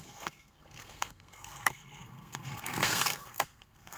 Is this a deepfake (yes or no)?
yes